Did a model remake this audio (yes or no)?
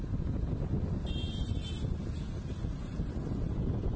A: no